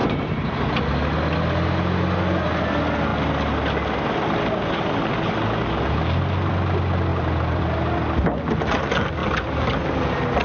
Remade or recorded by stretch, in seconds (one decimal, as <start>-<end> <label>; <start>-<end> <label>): 0.0-0.8 remade; 0.8-7.1 recorded; 7.1-7.6 remade; 7.6-10.4 recorded